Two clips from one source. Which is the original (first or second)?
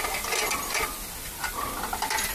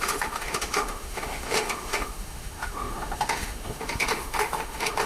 first